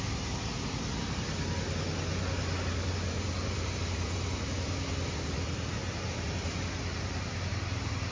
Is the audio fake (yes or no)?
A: no